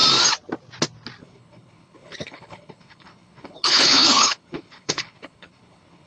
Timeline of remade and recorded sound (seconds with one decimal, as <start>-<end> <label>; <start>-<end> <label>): 0.0-1.2 recorded; 1.2-6.1 remade